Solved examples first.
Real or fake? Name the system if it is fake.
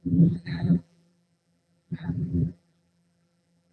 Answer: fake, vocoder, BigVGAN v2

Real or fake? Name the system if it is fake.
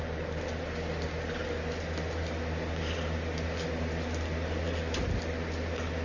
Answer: real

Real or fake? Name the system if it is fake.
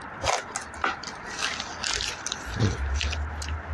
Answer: real